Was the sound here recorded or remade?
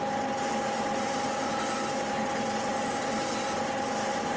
recorded